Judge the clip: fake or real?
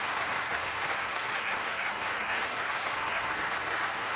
fake